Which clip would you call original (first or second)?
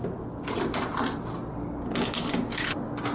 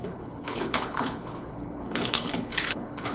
first